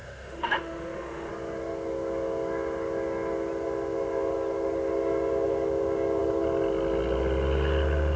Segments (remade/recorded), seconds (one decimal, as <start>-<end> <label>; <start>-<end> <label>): 0.0-1.3 remade; 1.3-8.2 recorded